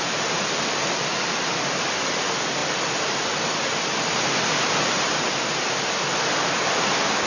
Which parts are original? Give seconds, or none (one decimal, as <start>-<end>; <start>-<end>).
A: 0.0-2.6; 3.1-7.3